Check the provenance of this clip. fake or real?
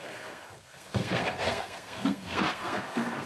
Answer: fake